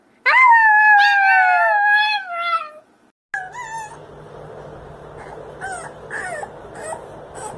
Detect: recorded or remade recorded